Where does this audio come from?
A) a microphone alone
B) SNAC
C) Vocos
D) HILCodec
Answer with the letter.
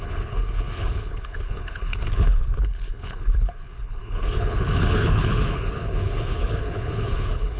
D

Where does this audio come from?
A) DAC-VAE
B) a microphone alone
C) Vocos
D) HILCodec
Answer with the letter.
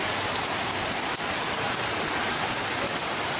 B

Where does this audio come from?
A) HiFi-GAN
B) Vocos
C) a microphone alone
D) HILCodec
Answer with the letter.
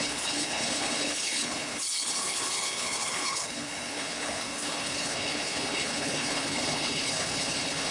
D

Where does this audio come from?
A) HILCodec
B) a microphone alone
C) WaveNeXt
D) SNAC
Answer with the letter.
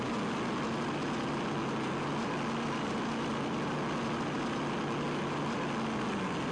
B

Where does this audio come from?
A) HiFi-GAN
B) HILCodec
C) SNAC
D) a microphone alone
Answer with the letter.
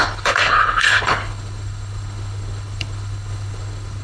B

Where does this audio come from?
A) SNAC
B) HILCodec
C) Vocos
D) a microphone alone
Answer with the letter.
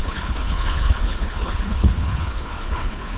B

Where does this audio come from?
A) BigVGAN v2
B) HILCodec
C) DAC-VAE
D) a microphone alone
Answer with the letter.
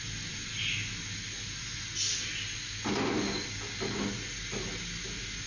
D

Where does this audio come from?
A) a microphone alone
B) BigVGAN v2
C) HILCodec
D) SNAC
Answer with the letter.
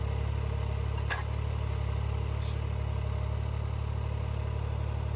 A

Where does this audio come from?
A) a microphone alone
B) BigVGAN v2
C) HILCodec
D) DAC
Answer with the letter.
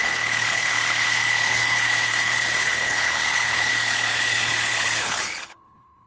C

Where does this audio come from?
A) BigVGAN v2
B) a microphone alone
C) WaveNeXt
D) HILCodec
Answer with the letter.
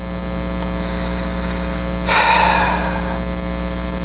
B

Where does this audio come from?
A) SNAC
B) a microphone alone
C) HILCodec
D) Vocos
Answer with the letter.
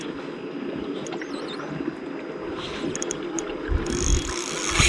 B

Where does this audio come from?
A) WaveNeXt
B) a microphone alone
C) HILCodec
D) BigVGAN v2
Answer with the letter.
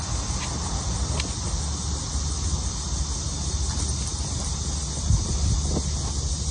B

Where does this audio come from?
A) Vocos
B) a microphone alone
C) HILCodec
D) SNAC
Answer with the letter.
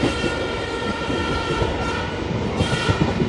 B